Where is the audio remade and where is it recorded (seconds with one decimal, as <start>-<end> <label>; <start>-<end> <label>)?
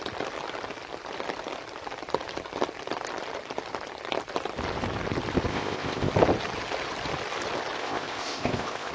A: 0.0-5.5 recorded; 5.5-6.1 remade; 6.1-7.8 recorded; 7.8-8.9 remade